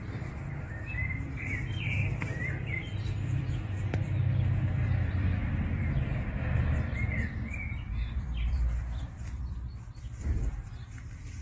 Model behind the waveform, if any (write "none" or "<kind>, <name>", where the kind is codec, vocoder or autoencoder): vocoder, BigVGAN v2